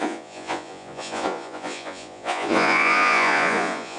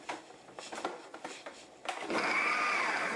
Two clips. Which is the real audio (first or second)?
second